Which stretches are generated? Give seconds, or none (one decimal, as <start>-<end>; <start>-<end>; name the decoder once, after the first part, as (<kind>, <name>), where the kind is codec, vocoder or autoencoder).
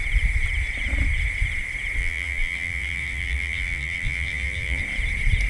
2.0-4.8 (vocoder, BigVGAN v2)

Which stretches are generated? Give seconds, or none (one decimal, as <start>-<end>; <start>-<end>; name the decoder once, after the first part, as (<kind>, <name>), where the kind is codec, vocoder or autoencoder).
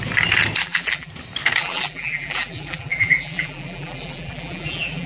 0.6-1.1 (vocoder, BigVGAN v2); 1.6-5.1